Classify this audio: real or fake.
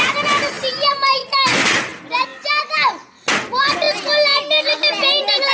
real